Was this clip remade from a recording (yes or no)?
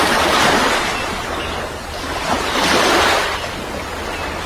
no